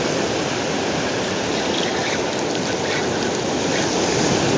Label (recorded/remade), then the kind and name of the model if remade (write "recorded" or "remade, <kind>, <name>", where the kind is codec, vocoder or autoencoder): recorded